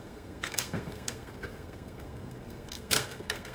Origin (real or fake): fake